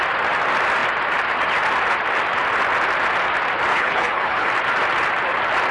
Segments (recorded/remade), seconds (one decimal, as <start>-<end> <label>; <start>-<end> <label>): 0.0-3.7 recorded; 3.7-4.5 remade; 4.5-5.7 recorded